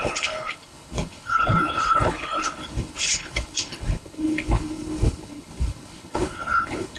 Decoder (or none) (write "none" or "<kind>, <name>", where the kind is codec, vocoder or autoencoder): codec, HILCodec